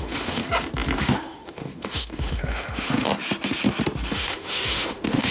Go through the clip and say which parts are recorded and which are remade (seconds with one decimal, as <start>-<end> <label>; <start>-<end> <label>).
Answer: 0.0-0.4 remade; 0.4-1.0 recorded; 1.0-3.1 remade; 3.1-4.1 recorded; 4.1-5.3 remade